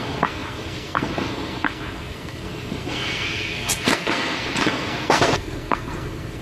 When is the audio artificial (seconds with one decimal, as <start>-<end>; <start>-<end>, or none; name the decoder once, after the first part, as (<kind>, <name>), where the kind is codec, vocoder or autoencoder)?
0.0-6.4 (codec, SNAC)